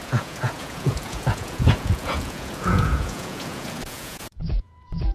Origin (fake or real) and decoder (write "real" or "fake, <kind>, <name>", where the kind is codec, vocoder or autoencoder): fake, vocoder, Vocos